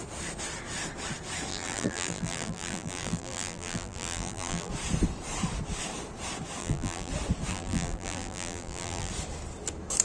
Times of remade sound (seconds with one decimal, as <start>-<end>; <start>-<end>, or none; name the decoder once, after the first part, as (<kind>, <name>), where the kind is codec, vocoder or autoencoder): 1.5-4.7 (vocoder, BigVGAN v2); 6.6-7.1; 7.5-9.1